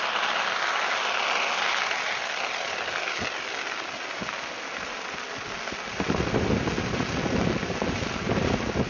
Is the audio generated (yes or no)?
no